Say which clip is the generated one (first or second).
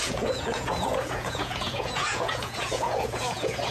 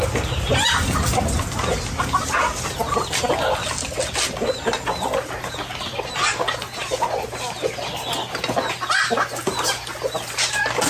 first